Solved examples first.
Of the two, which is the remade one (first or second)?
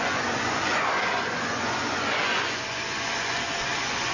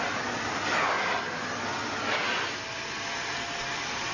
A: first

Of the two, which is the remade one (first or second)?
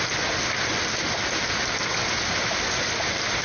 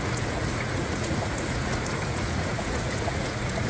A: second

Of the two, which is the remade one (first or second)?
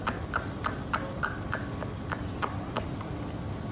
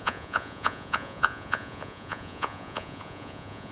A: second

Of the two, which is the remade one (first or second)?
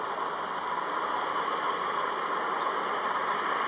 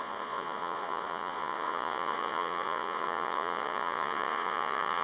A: second